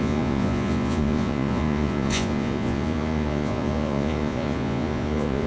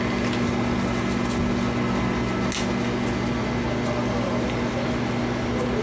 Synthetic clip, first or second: first